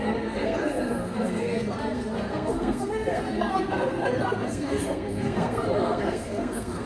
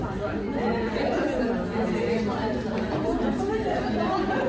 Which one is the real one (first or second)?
second